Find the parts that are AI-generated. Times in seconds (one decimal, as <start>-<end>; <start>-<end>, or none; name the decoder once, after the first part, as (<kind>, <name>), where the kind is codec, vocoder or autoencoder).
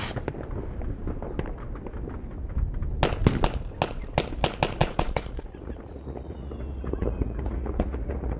4.8-8.4 (vocoder, Vocos)